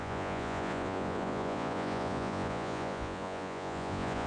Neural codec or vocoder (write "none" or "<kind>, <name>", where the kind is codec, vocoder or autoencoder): vocoder, Vocos